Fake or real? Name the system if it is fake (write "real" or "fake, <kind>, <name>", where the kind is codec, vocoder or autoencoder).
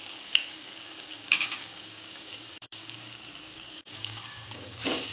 fake, codec, DAC